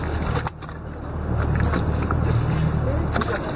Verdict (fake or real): real